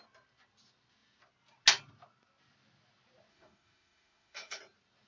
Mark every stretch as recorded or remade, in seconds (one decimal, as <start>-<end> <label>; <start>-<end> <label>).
0.0-3.3 recorded; 3.3-4.6 remade; 4.6-5.1 recorded